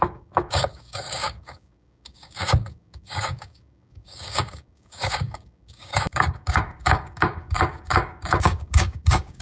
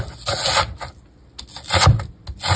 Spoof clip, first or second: first